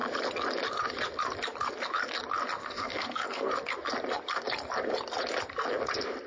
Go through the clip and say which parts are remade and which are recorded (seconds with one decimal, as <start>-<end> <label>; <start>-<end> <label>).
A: 0.0-2.6 recorded; 2.6-3.5 remade; 3.5-6.3 recorded